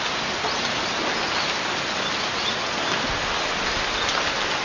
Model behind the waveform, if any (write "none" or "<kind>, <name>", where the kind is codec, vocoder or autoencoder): none